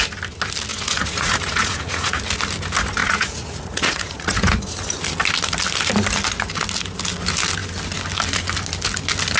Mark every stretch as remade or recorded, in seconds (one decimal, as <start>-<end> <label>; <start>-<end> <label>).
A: 0.0-0.7 recorded; 0.7-2.2 remade; 2.2-3.0 recorded; 3.0-4.5 remade; 4.5-9.4 recorded